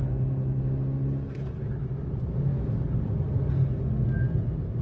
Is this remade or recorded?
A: recorded